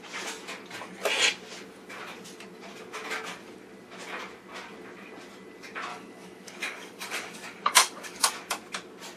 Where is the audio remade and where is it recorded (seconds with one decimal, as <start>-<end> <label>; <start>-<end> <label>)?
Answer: 0.0-5.9 recorded; 5.9-8.3 remade; 8.3-9.2 recorded